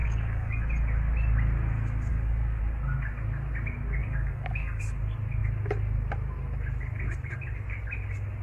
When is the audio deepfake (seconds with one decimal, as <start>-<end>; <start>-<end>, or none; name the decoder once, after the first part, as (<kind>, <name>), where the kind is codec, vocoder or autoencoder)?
0.0-0.6 (codec, DAC); 2.1-2.6; 4.0-4.8